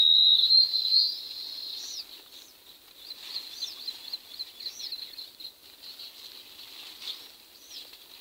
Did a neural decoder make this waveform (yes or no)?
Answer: no